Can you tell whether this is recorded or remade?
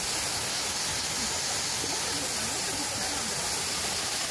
recorded